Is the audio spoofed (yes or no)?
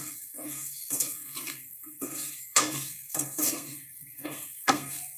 yes